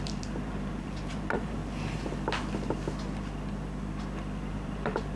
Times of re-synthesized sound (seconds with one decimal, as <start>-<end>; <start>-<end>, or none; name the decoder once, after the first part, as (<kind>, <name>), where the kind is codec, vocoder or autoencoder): 0.0-1.6 (vocoder, BigVGAN v2); 4.5-5.2